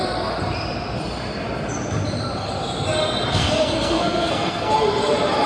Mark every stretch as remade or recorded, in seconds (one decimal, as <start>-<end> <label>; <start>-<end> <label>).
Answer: 0.0-3.3 recorded; 3.3-4.7 remade; 4.7-5.5 recorded